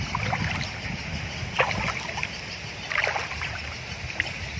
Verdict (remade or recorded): recorded